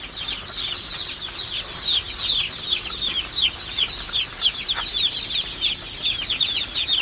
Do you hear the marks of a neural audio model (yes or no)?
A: no